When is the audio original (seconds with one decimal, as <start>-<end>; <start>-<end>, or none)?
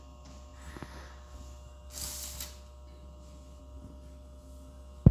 0.0-5.1